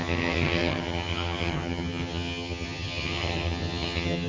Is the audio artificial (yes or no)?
yes